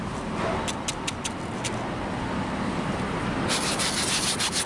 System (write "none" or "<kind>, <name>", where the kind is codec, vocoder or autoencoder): none